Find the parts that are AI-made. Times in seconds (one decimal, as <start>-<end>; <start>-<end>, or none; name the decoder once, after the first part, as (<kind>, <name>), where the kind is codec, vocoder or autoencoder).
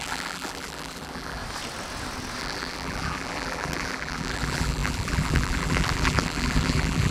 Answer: 0.0-1.4 (vocoder, BigVGAN v2); 2.4-7.1